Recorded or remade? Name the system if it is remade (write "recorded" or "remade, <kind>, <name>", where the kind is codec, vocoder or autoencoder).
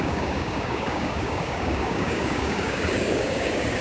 remade, codec, DAC